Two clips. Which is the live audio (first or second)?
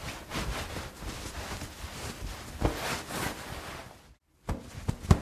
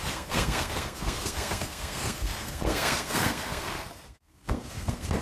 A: first